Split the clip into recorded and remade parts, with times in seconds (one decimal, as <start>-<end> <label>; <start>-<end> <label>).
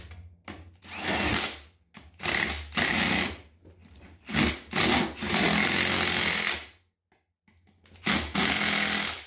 0.0-9.3 recorded